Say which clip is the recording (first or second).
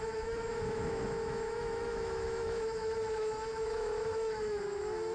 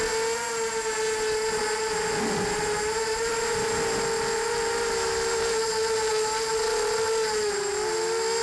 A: second